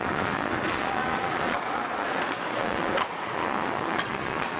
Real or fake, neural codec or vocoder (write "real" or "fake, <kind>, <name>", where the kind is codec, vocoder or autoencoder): fake, vocoder, Vocos